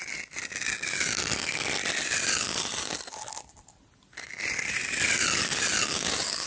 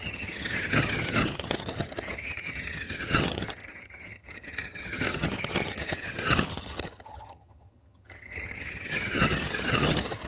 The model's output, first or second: second